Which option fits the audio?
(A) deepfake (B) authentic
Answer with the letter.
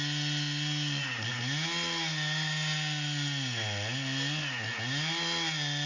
B